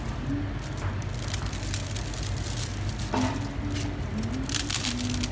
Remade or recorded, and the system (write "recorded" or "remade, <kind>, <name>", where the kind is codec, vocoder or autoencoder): recorded